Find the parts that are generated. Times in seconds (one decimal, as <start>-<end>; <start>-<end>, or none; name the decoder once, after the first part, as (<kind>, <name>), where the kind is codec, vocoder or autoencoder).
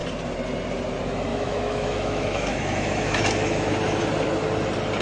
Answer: 1.3-3.7 (autoencoder, DAC-VAE)